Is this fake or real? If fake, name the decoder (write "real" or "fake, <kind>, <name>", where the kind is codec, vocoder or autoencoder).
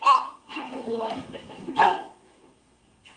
fake, codec, SNAC